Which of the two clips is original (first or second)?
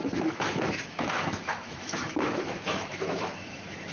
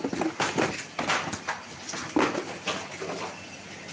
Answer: second